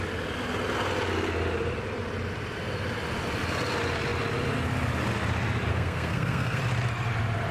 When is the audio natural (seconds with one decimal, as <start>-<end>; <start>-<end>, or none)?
0.0-5.7; 6.6-7.5